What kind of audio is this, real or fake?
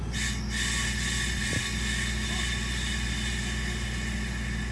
real